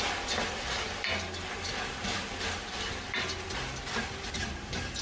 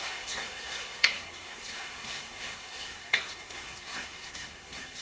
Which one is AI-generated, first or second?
second